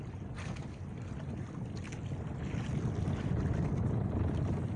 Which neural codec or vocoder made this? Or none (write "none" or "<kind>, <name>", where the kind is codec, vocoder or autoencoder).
none